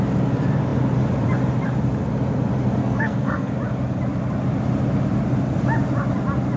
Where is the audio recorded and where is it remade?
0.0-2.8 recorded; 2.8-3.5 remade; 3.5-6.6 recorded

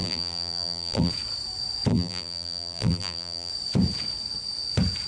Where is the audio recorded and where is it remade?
0.0-1.1 remade; 1.1-1.9 recorded; 1.9-3.5 remade; 3.5-5.1 recorded

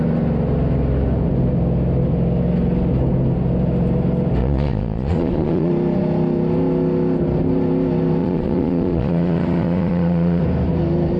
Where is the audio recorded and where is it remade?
0.0-4.4 recorded; 4.4-5.7 remade; 5.7-8.2 recorded; 8.2-10.4 remade; 10.4-11.2 recorded

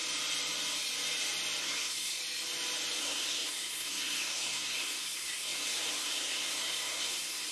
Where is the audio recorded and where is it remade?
0.0-1.6 recorded; 1.6-2.2 remade; 2.2-3.0 recorded; 3.0-7.5 remade

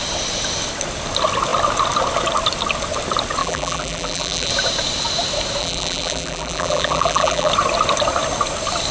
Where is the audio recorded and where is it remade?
0.0-3.4 recorded; 3.4-4.5 remade; 4.5-5.6 recorded; 5.6-7.5 remade; 7.5-8.9 recorded

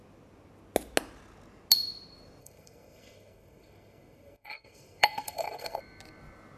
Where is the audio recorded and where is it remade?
0.0-2.4 recorded; 2.4-5.8 remade; 5.8-6.6 recorded

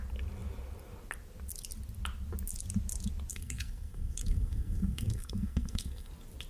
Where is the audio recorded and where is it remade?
0.0-3.3 recorded; 3.3-6.1 remade; 6.1-6.5 recorded